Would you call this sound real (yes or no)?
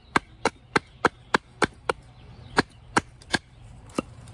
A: no